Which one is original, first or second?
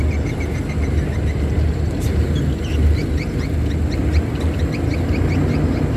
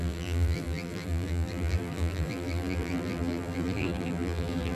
first